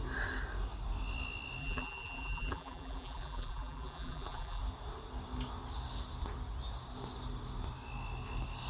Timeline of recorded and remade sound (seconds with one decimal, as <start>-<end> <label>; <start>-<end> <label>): 0.0-1.6 recorded; 1.6-4.6 remade; 4.6-8.7 recorded